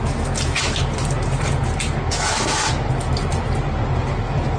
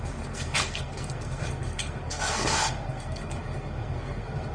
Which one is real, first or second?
first